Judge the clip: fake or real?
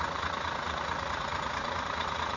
fake